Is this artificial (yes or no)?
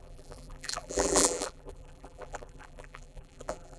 yes